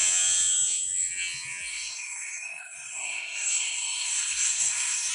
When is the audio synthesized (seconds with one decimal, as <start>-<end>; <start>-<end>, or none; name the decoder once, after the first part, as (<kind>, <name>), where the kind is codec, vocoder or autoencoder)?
1.7-5.1 (codec, SNAC)